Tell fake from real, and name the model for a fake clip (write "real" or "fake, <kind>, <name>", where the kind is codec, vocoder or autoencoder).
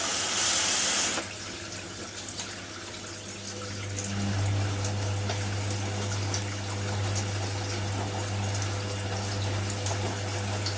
real